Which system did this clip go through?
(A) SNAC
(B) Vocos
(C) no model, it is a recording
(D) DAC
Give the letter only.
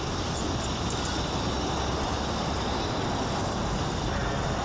C